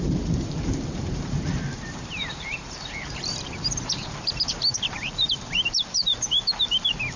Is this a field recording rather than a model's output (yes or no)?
no